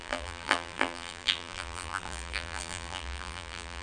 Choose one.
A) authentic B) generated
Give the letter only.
B